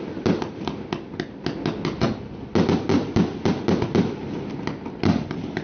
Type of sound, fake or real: real